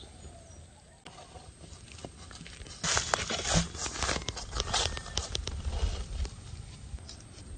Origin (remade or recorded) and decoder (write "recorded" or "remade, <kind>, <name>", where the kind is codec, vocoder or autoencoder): recorded